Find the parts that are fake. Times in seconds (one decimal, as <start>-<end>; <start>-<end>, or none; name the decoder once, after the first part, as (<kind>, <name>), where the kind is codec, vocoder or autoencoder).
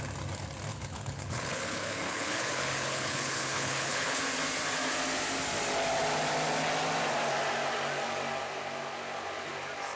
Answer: 0.7-4.2 (codec, HILCodec)